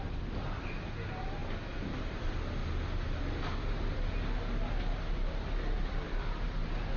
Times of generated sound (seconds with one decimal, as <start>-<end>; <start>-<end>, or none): none